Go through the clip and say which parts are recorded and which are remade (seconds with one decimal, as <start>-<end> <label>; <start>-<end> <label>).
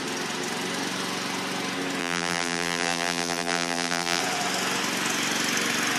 0.0-2.0 recorded; 2.0-4.2 remade; 4.2-6.0 recorded